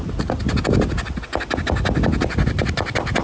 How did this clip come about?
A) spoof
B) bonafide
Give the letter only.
B